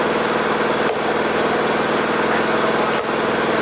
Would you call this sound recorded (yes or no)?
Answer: yes